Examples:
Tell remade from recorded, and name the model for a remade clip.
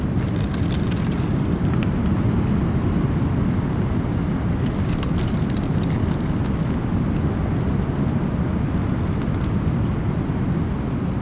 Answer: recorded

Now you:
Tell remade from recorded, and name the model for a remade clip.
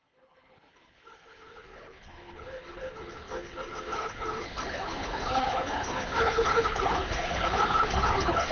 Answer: remade, codec, HILCodec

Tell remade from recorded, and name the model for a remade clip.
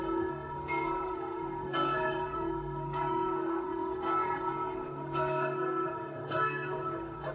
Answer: remade, codec, SNAC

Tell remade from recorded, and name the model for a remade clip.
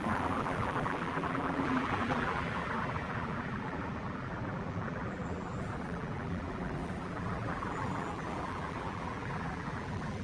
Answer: remade, vocoder, BigVGAN v2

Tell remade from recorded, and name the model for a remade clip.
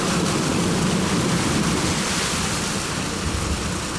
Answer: recorded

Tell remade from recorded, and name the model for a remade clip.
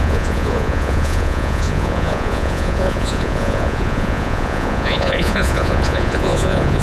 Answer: remade, vocoder, Vocos